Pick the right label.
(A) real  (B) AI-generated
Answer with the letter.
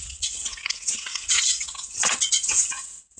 B